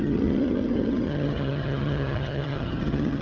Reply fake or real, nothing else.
fake